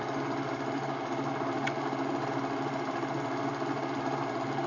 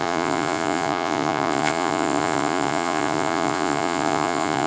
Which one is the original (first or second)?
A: first